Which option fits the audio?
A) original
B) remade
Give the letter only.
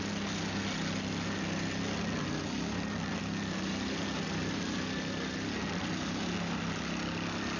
A